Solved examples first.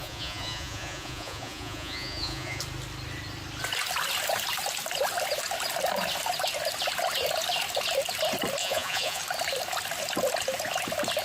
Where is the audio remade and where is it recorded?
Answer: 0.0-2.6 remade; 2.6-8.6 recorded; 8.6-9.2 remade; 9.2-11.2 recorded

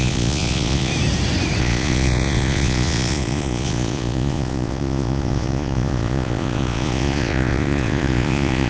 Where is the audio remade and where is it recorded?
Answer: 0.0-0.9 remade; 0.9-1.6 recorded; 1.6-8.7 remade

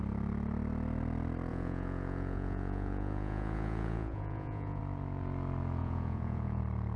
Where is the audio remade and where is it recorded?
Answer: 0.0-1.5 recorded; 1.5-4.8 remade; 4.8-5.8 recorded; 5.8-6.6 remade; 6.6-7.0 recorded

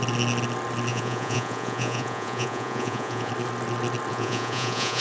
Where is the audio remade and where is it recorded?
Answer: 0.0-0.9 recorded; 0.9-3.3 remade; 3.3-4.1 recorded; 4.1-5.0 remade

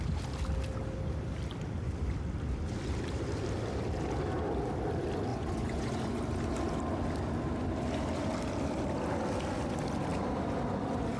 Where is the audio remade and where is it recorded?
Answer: 0.0-5.3 recorded; 5.3-6.2 remade; 6.2-11.2 recorded

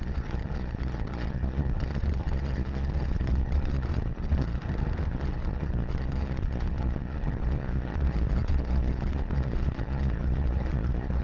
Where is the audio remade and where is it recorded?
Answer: 0.0-4.6 remade; 4.6-5.1 recorded; 5.1-11.2 remade

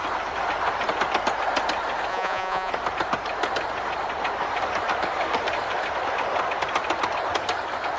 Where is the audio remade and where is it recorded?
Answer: 0.0-2.1 recorded; 2.1-2.7 remade; 2.7-8.0 recorded

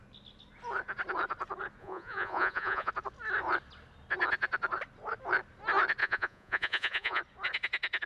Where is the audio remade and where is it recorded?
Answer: 0.0-1.8 recorded; 1.8-2.9 remade; 2.9-6.0 recorded; 6.0-7.2 remade; 7.2-8.1 recorded